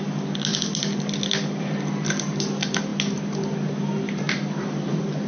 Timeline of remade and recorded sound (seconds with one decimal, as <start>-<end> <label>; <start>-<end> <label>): 0.0-5.3 recorded